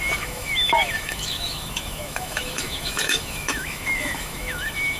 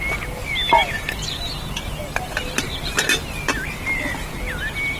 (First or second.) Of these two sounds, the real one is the second